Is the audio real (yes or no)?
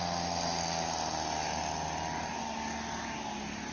yes